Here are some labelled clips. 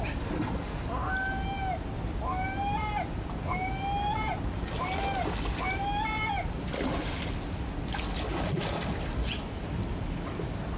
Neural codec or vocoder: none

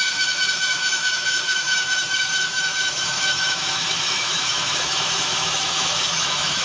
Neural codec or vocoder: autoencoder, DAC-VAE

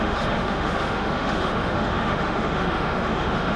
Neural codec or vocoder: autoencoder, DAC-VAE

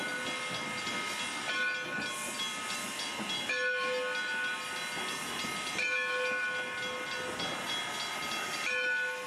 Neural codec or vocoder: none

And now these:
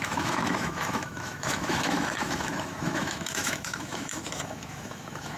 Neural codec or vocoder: autoencoder, DAC-VAE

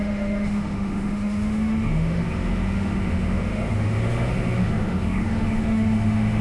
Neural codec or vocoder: autoencoder, DAC-VAE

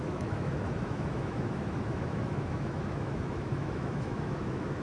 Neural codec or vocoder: autoencoder, DAC-VAE